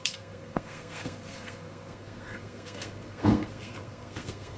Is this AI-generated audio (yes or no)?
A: yes